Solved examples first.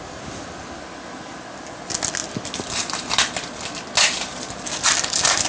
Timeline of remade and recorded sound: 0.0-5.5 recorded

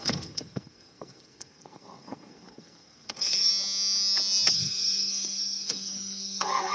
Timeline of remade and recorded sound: 0.0-3.5 remade; 3.5-4.5 recorded; 4.5-6.7 remade

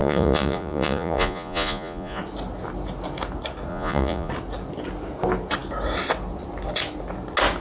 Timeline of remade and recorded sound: 0.0-2.2 remade; 2.2-3.7 recorded; 3.7-4.3 remade; 4.3-7.6 recorded

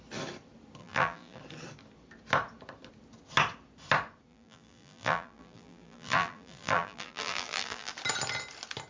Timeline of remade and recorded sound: 0.0-0.8 recorded; 0.8-1.4 remade; 1.4-4.3 recorded; 4.3-7.9 remade; 7.9-8.9 recorded

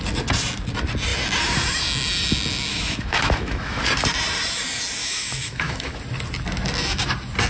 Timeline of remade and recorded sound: 0.0-2.7 recorded; 2.7-3.8 remade; 3.8-5.0 recorded; 5.0-6.0 remade; 6.0-7.5 recorded